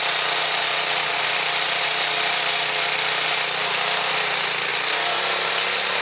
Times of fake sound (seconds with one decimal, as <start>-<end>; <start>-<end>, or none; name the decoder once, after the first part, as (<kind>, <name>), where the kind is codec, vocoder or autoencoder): 1.1-1.8 (vocoder, BigVGAN v2)